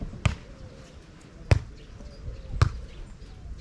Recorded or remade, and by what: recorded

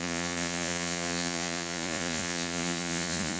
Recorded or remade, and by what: remade, vocoder, Vocos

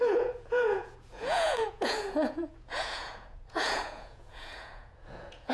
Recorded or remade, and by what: remade, vocoder, Vocos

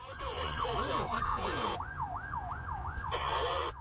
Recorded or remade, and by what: remade, vocoder, Vocos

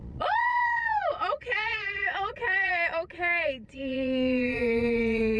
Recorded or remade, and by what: remade, vocoder, Vocos